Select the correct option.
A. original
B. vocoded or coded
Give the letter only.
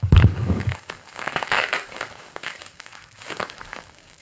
B